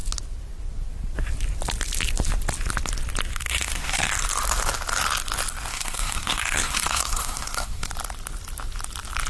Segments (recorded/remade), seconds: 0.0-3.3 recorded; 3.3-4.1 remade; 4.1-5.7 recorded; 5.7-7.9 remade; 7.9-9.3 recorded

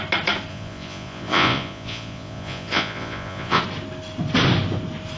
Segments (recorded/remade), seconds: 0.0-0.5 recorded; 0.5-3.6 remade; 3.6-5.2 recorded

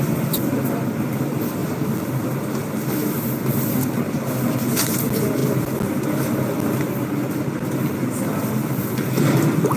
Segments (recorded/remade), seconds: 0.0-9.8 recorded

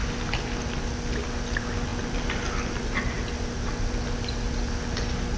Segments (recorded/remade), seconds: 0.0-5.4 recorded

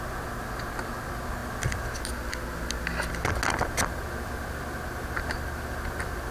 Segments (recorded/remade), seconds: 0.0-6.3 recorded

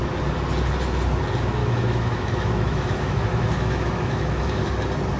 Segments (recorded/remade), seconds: 0.0-1.6 recorded; 1.6-4.7 remade; 4.7-5.2 recorded

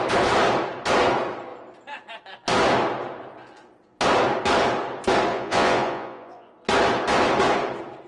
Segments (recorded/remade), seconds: 0.0-5.3 recorded; 5.3-6.5 remade; 6.5-8.1 recorded

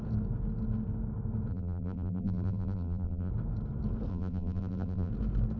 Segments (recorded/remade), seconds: 0.0-1.5 recorded; 1.5-3.3 remade; 3.3-4.1 recorded; 4.1-5.1 remade; 5.1-5.6 recorded